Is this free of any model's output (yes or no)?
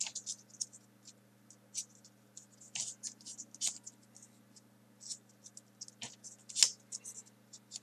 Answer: yes